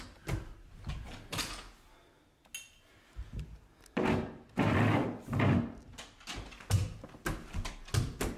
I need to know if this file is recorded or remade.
recorded